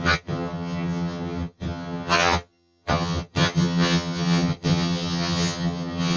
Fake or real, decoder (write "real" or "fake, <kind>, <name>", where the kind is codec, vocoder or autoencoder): fake, vocoder, HiFi-GAN